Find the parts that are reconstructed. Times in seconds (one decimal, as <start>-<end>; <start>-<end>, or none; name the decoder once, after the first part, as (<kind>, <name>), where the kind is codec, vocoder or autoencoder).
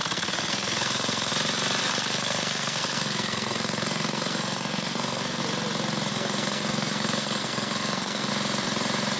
0.0-1.3 (codec, SNAC); 1.8-5.4; 6.1-8.3